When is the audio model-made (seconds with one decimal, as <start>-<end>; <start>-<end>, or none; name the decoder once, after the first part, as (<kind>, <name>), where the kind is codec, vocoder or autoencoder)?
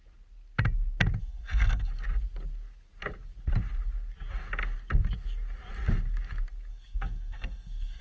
1.2-1.9 (codec, SNAC); 6.7-8.0